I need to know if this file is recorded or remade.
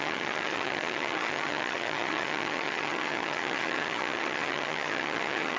remade